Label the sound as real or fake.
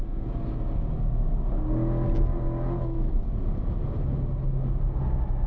real